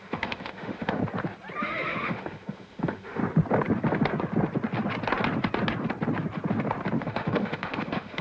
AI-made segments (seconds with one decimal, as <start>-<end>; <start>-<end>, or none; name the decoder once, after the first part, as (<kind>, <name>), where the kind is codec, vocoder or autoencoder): 0.0-1.0 (autoencoder, DAC-VAE); 1.6-3.2; 7.0-8.2